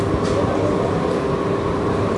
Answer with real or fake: real